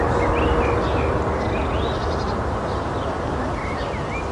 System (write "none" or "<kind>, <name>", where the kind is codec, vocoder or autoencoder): none